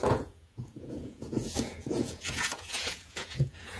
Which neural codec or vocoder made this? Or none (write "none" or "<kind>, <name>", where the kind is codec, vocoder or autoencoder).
vocoder, Vocos